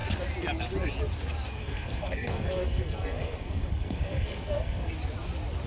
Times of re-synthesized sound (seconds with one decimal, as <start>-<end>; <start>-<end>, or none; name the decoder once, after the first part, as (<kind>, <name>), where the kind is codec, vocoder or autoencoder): 1.6-4.9 (codec, SNAC)